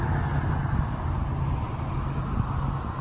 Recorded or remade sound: recorded